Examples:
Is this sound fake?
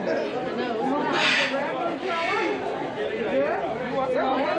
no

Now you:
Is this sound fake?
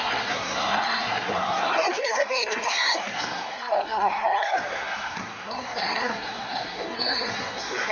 yes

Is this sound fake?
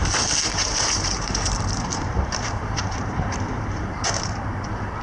yes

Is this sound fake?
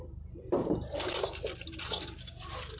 yes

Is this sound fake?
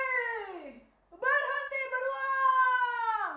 no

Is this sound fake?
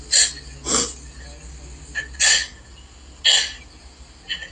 no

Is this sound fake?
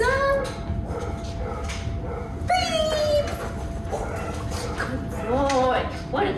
no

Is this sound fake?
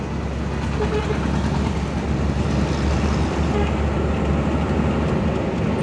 no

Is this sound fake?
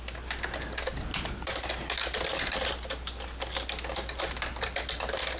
no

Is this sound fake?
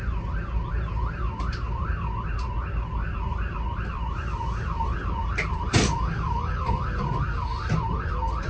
no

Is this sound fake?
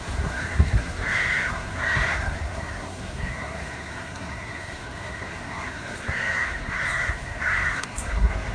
yes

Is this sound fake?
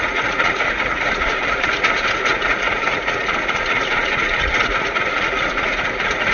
yes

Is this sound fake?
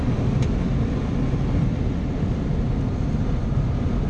no